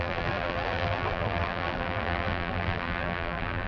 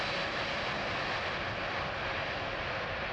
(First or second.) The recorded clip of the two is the second